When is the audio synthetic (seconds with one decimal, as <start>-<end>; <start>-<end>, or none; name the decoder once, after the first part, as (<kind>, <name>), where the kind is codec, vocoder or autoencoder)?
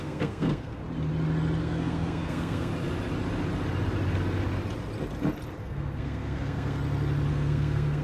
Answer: 0.0-0.8 (codec, SNAC); 1.6-2.7; 5.6-6.8; 7.3-8.0